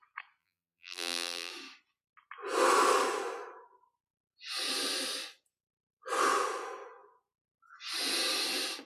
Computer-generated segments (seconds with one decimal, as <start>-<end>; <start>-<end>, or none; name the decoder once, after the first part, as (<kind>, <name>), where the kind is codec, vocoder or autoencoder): 0.4-1.5 (vocoder, BigVGAN v2)